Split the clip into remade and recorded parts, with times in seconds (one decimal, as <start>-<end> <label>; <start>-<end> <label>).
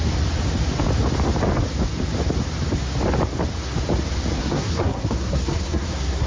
0.0-4.4 recorded; 4.4-6.3 remade